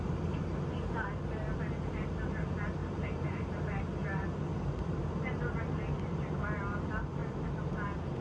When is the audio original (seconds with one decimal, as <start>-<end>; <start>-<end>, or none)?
0.0-2.8; 3.5-4.5; 5.7-7.2